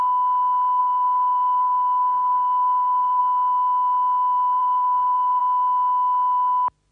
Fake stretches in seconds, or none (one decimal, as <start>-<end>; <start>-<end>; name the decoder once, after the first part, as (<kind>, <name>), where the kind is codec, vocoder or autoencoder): 0.8-3.2 (codec, DAC); 4.6-5.4